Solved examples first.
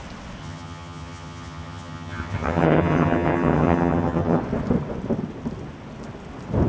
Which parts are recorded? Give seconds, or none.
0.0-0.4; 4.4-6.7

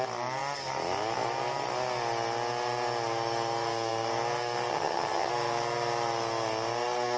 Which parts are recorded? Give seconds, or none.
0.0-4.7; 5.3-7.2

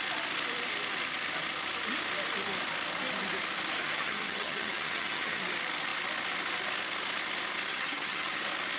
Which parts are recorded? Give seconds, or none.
0.0-3.8; 5.4-7.7; 8.4-8.8

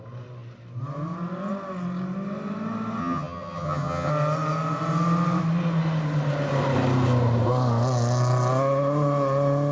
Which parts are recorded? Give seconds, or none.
0.0-3.0; 4.1-9.7

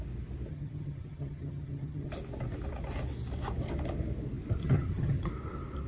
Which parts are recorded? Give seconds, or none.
0.0-0.5; 2.1-4.6; 5.3-5.9